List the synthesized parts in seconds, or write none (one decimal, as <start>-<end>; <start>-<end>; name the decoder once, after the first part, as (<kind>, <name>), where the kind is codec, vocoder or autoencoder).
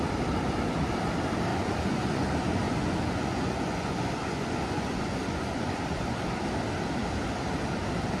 1.5-6.4 (vocoder, Vocos)